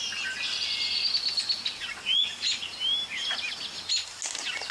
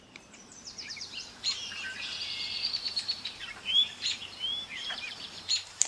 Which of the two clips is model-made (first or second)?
second